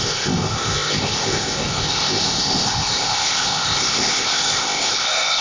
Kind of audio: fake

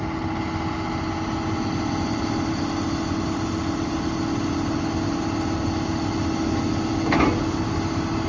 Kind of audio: real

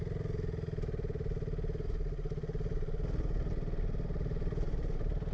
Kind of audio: real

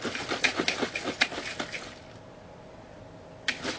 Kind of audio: real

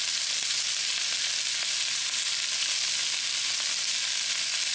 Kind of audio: real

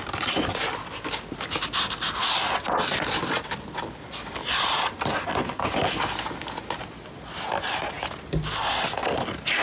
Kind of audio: real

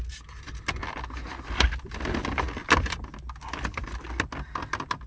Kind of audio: real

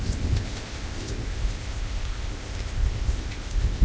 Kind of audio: fake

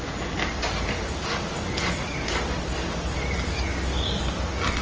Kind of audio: real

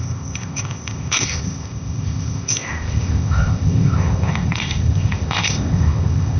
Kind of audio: fake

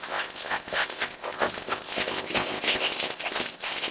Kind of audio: fake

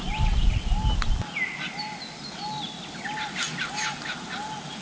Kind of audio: real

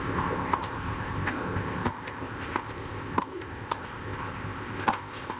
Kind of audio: fake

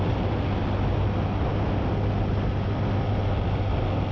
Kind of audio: real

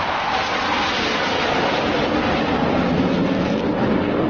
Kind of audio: real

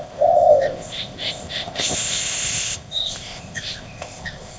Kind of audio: fake